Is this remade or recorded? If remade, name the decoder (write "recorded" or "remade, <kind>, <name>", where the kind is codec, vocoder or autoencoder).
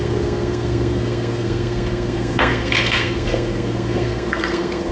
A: remade, codec, SNAC